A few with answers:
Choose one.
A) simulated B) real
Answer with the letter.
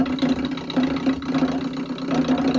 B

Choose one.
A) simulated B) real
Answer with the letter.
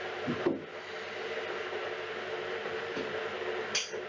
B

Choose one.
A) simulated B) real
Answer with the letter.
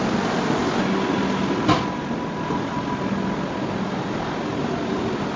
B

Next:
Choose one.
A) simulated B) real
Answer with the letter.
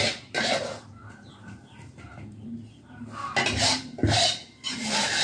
B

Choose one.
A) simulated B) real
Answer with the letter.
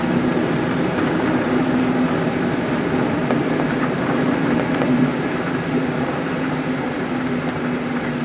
B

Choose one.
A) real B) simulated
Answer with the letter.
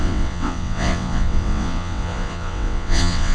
B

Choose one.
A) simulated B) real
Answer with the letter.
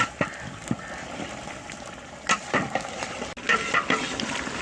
B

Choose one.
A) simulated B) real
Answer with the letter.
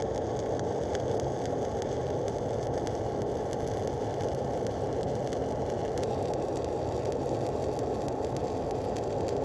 B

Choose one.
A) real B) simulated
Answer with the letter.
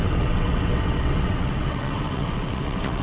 B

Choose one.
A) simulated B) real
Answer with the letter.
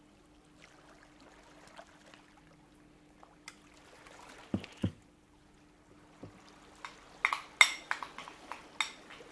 B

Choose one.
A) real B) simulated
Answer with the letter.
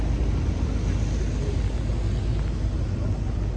A